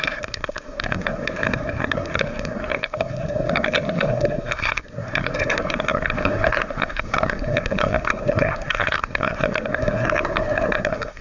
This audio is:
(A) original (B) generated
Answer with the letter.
B